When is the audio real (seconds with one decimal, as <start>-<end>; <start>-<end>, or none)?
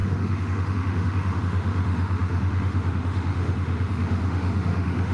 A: none